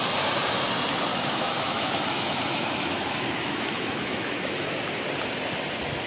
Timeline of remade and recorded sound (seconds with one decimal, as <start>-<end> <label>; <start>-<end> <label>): 0.0-1.1 recorded; 1.1-4.7 remade; 4.7-6.1 recorded